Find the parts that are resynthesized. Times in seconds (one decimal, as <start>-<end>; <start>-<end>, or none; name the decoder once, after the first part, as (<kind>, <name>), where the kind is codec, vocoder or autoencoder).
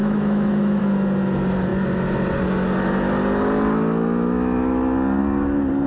0.0-0.8 (autoencoder, DAC-VAE)